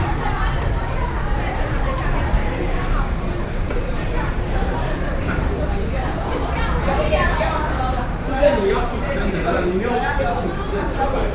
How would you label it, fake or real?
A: fake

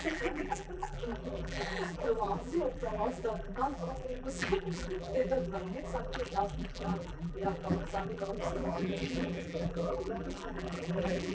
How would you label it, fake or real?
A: fake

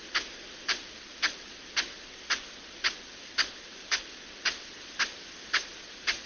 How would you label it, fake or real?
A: real